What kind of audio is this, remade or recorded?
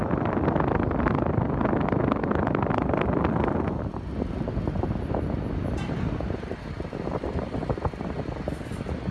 recorded